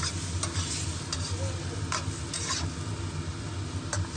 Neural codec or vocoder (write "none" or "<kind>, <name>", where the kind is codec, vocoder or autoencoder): none